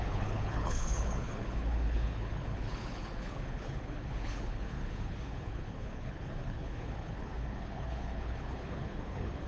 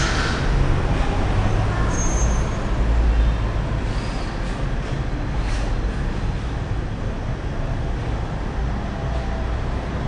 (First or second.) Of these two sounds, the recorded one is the second